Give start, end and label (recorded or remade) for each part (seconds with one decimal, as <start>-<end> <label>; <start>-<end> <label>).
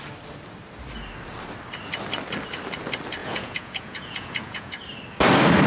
0.0-3.2 recorded; 3.2-4.7 remade; 4.7-5.7 recorded